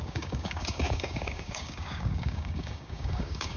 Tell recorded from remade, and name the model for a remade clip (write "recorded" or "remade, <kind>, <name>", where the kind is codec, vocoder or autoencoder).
remade, codec, DAC